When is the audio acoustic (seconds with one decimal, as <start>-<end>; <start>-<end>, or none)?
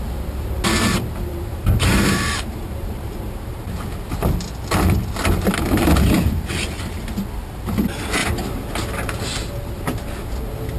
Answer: 0.0-1.3; 3.7-10.8